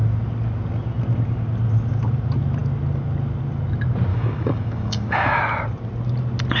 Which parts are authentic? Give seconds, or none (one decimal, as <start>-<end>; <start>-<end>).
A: 0.0-4.1; 5.4-6.6

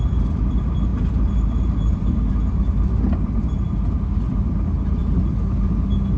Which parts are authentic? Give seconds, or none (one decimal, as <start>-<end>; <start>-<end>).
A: 0.0-6.2

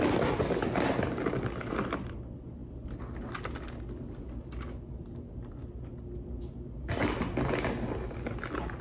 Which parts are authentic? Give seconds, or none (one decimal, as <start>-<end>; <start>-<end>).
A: 0.0-8.8

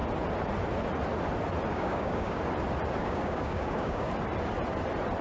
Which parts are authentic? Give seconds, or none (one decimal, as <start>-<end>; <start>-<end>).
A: 0.0-1.7; 2.4-3.0; 4.1-5.2

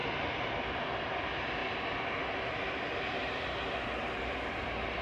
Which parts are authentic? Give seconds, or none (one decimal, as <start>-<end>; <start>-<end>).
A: 0.0-5.0

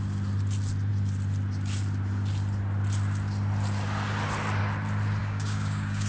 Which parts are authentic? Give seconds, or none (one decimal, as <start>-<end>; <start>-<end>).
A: 0.0-5.2

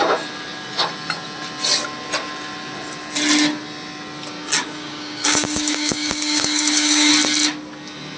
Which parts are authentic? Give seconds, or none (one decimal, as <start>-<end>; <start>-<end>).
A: 0.0-4.8; 7.1-8.2